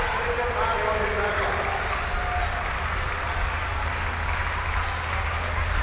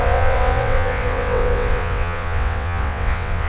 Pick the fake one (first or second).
second